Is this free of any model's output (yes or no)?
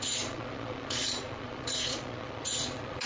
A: no